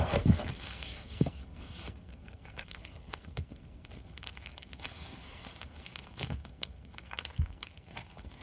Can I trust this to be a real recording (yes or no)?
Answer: no